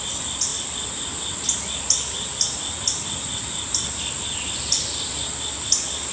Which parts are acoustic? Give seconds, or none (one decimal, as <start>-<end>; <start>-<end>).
0.0-6.1